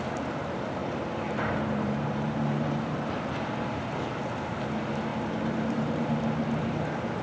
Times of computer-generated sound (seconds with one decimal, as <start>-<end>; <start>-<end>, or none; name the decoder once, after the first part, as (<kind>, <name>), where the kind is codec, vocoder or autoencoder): 0.8-4.1 (vocoder, BigVGAN v2); 5.1-6.8